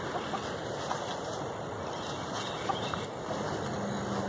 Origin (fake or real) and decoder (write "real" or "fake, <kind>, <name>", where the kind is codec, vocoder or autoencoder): real